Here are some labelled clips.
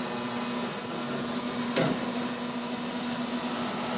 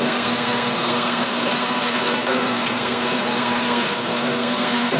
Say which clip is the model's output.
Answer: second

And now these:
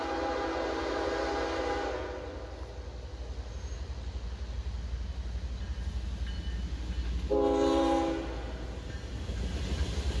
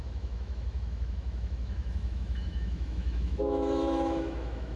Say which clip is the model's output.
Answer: second